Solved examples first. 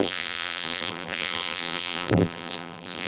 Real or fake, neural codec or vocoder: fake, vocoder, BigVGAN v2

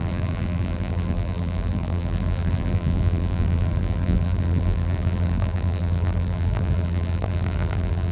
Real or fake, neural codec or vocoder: fake, vocoder, BigVGAN v2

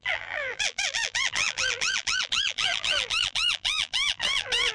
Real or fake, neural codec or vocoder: fake, vocoder, BigVGAN v2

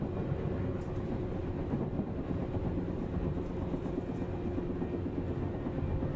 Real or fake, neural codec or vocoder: real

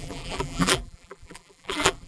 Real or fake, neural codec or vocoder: fake, vocoder, BigVGAN v2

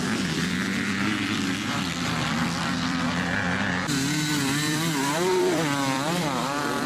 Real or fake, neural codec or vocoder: fake, vocoder, BigVGAN v2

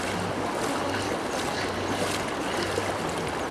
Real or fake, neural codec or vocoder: real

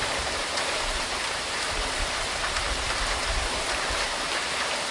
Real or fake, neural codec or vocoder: fake, vocoder, BigVGAN v2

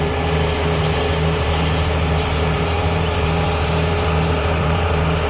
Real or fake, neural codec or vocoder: fake, vocoder, BigVGAN v2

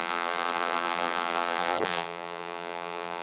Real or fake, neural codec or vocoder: fake, vocoder, BigVGAN v2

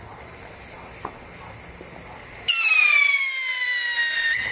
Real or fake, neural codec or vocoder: real